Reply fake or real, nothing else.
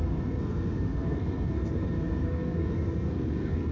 fake